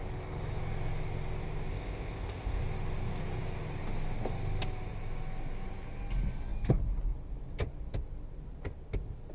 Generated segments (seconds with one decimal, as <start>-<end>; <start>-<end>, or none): 1.7-2.6